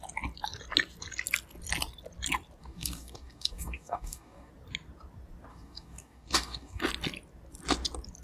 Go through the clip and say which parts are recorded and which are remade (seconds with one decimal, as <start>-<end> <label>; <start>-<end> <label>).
0.0-2.6 recorded; 2.6-4.5 remade; 4.5-5.5 recorded; 5.5-6.8 remade; 6.8-8.2 recorded